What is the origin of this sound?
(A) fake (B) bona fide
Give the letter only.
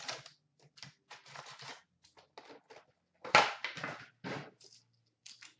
B